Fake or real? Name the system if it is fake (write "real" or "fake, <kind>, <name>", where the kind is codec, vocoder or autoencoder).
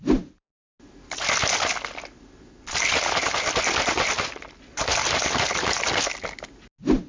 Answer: real